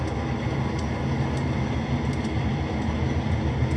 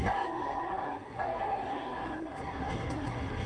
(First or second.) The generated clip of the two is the second